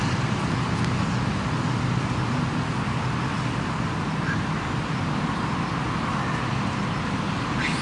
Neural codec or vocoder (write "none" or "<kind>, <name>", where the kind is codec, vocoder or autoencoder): none